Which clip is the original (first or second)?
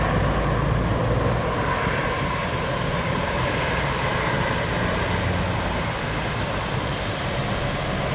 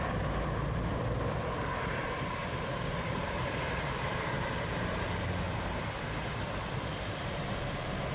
first